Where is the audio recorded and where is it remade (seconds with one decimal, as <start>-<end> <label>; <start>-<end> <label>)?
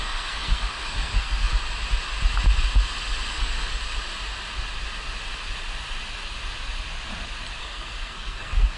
0.0-1.5 remade; 1.5-3.3 recorded; 3.3-3.7 remade; 3.7-7.6 recorded; 7.6-8.8 remade